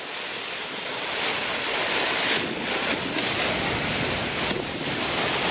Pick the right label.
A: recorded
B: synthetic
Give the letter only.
A